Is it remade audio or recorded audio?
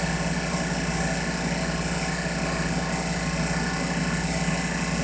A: recorded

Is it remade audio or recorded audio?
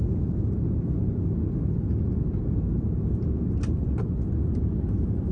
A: recorded